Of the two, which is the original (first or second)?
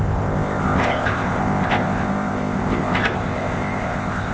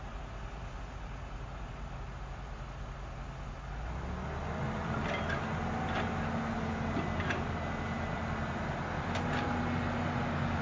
second